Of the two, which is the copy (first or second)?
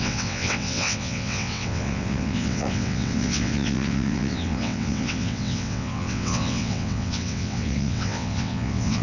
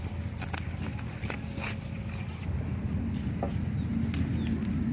first